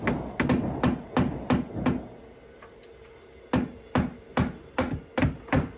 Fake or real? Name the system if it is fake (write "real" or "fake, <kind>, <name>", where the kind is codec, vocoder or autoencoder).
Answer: real